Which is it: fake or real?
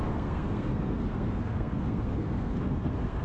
fake